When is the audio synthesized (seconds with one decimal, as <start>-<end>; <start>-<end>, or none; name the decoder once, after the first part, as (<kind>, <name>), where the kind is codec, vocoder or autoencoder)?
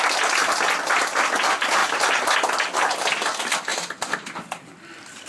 none